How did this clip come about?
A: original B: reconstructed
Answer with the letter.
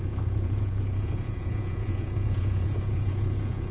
B